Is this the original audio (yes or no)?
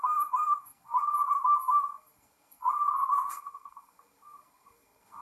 no